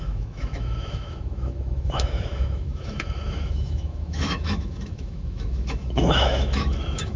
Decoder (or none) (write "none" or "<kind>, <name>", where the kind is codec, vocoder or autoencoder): autoencoder, DAC-VAE